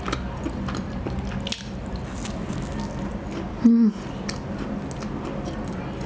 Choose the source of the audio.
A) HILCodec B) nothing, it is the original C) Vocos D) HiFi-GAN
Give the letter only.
B